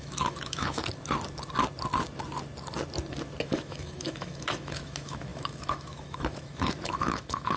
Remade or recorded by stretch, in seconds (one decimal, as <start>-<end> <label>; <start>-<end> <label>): 0.0-0.8 remade; 0.8-3.4 recorded; 3.4-7.6 remade

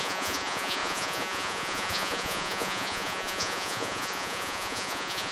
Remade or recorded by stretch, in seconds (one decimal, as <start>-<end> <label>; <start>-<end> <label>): 0.0-5.3 remade

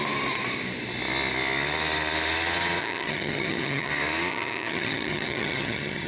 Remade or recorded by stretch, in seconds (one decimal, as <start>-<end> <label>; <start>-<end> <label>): 0.0-2.8 recorded; 2.8-3.9 remade; 3.9-4.3 recorded; 4.3-6.1 remade

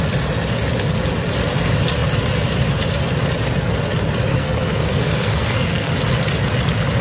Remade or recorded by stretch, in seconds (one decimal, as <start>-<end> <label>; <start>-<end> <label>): 0.0-4.3 recorded; 4.3-5.9 remade; 5.9-7.0 recorded

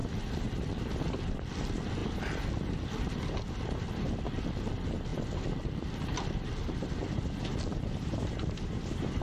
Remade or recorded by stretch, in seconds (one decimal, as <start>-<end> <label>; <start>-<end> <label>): 0.0-7.7 recorded; 7.7-8.4 remade; 8.4-9.2 recorded

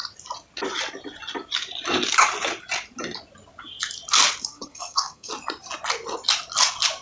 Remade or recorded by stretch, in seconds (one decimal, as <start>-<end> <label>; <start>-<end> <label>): 0.0-4.5 recorded; 4.5-5.3 remade; 5.3-7.0 recorded

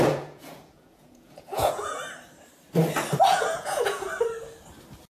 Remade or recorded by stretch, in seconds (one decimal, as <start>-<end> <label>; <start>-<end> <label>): 0.0-2.0 remade; 2.0-3.3 recorded; 3.3-4.1 remade; 4.1-5.1 recorded